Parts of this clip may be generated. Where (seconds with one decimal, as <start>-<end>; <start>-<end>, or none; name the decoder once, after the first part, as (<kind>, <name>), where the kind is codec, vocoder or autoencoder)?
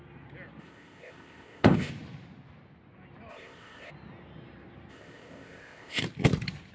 0.6-1.9 (codec, ZipCodec); 3.3-3.9; 4.9-6.0